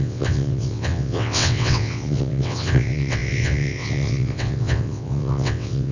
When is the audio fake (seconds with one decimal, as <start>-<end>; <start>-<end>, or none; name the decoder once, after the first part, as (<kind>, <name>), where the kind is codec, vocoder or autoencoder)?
0.0-5.9 (vocoder, WaveNeXt)